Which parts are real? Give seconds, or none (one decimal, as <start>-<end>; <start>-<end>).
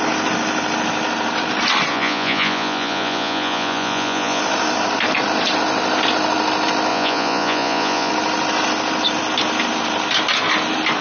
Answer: 0.0-1.9; 4.4-6.9; 8.1-11.0